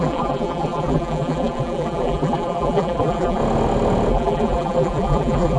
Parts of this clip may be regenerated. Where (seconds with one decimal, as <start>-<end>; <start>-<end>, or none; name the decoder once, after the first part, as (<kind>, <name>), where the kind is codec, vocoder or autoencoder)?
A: 0.0-3.4 (vocoder, BigVGAN v2); 4.1-5.6

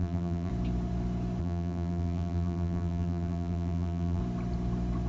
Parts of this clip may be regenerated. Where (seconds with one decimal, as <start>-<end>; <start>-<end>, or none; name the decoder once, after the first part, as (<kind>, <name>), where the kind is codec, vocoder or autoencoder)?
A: 0.0-0.5 (vocoder, BigVGAN v2); 1.4-4.2

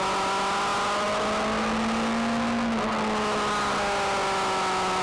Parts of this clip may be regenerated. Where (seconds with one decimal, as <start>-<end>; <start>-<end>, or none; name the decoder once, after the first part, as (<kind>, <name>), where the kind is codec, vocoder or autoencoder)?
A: none

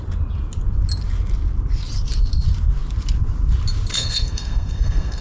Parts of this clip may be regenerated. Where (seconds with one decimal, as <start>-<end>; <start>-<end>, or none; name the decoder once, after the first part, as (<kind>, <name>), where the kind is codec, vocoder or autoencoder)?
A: 3.9-5.2 (codec, SNAC)

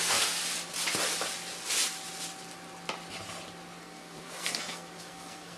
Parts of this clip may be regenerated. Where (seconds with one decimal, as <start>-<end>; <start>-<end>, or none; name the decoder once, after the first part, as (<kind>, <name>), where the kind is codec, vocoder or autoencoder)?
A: 0.0-0.4 (codec, SNAC); 3.8-5.6

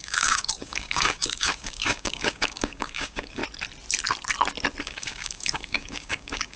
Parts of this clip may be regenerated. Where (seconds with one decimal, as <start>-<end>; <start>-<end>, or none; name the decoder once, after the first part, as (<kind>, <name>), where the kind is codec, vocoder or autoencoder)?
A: 0.0-3.4 (codec, DAC); 4.8-6.6

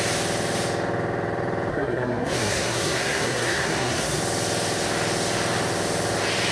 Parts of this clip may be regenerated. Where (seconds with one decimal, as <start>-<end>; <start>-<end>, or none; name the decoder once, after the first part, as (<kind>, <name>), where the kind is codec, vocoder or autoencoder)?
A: 1.7-4.2 (codec, SNAC)